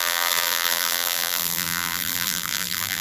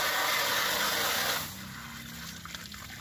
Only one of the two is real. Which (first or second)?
second